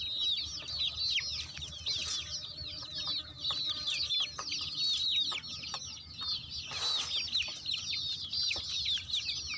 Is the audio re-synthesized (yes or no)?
no